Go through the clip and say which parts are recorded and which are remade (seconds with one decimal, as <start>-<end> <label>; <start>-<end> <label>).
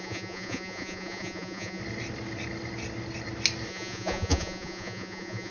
0.0-1.8 remade; 1.8-3.7 recorded; 3.7-5.5 remade